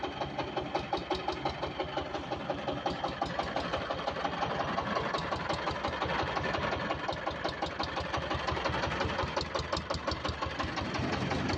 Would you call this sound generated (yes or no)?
no